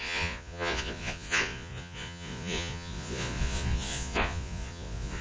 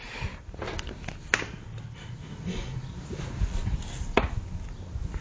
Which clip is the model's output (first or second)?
first